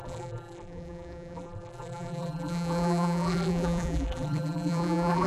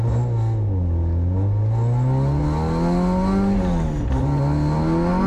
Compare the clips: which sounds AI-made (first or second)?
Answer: first